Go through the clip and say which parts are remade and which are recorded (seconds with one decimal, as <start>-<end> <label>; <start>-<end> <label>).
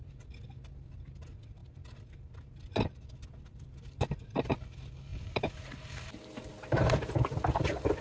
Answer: 0.0-8.0 recorded